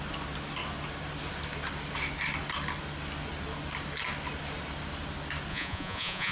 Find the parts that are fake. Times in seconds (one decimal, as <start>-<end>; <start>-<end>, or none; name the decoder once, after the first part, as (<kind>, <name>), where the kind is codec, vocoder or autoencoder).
5.5-6.3 (vocoder, Vocos)